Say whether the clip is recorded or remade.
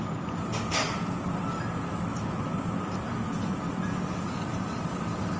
recorded